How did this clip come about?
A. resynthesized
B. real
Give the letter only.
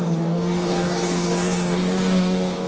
A